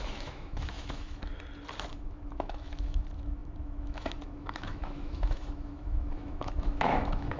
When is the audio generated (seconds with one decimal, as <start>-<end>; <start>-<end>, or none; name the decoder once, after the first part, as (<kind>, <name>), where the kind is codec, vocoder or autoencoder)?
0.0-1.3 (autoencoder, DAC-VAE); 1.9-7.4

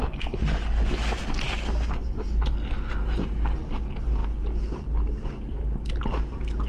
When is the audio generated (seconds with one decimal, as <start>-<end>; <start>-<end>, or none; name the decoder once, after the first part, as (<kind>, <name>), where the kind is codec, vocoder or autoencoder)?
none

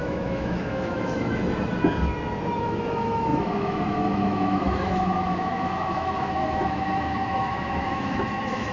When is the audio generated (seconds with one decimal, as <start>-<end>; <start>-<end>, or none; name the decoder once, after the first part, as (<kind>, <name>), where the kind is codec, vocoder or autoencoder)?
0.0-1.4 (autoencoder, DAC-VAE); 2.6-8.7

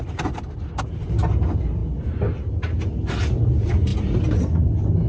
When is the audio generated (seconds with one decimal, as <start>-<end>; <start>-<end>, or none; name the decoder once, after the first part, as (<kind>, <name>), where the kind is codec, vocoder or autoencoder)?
none

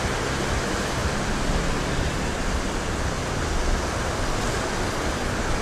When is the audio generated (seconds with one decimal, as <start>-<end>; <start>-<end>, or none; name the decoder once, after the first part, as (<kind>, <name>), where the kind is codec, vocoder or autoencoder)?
none

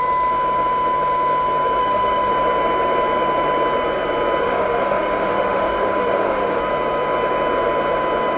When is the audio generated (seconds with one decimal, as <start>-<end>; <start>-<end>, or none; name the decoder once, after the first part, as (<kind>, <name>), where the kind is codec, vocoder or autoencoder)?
1.8-2.3 (autoencoder, DAC-VAE); 4.4-6.6

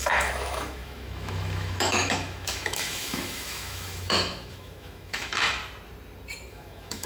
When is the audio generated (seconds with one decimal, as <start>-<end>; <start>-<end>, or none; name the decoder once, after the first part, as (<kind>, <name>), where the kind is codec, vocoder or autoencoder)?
0.0-5.6 (autoencoder, DAC-VAE); 6.5-7.1

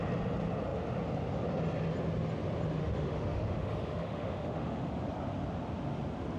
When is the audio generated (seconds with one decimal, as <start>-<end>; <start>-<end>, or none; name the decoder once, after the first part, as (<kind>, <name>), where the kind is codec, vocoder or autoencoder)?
2.8-4.9 (autoencoder, DAC-VAE)